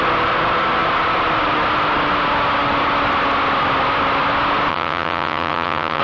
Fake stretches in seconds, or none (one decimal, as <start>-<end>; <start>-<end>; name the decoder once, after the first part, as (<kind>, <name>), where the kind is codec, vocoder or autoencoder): 4.7-6.0 (vocoder, HiFi-GAN)